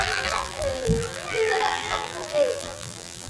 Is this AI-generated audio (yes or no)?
yes